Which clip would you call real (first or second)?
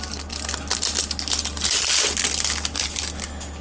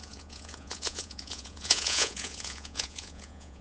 first